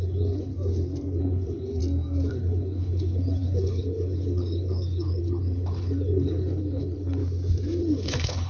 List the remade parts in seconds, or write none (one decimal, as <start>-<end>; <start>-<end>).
0.0-0.5; 1.2-1.8; 2.3-7.2; 7.8-8.5